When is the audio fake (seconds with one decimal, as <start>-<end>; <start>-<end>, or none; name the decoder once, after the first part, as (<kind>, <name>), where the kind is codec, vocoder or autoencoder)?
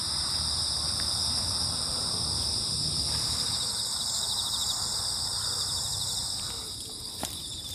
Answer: 0.0-7.7 (vocoder, BigVGAN v2)